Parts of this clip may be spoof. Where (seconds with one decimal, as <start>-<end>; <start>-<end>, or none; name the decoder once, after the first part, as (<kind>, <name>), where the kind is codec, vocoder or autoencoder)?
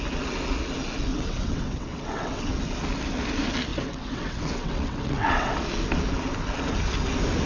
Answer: 1.1-2.5 (vocoder, WaveNeXt); 3.7-5.5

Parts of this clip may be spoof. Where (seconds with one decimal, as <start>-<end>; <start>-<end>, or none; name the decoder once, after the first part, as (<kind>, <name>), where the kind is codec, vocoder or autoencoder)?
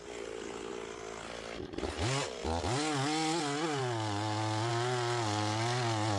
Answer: none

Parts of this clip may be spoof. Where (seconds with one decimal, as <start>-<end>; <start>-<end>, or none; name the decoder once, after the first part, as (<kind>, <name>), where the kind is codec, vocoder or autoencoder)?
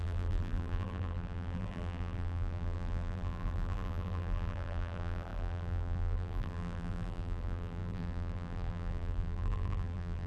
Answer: 0.0-10.3 (vocoder, BigVGAN v2)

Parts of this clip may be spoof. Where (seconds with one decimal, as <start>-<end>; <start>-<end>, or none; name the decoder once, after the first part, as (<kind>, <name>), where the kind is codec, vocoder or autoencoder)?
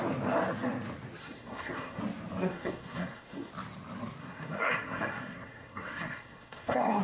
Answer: 1.2-2.0 (codec, SNAC); 2.5-3.5; 4.2-7.0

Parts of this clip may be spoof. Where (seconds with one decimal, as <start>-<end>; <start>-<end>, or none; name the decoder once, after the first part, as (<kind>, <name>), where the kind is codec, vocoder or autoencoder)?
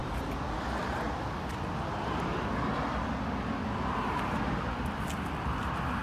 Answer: none